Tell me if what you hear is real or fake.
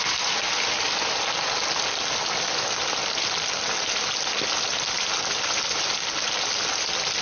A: real